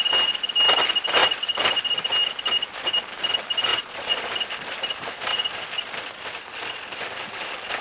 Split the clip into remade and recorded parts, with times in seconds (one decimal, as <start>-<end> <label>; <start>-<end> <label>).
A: 0.0-3.7 recorded; 3.7-4.3 remade; 4.3-7.8 recorded